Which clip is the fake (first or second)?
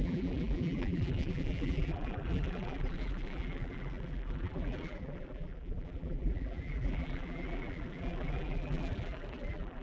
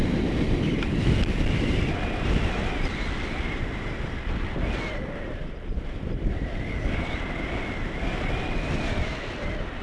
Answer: first